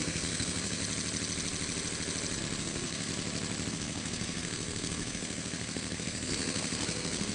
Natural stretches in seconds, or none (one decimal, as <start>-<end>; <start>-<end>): 0.8-2.6; 3.1-3.7